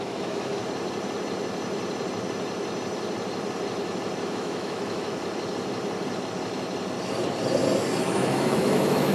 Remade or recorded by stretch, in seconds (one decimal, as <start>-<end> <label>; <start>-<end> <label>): 0.0-0.6 remade; 0.6-4.3 recorded; 4.3-5.2 remade; 5.2-8.0 recorded; 8.0-9.1 remade